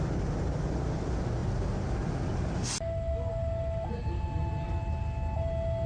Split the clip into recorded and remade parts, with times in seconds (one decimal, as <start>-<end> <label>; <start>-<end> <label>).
0.0-5.9 recorded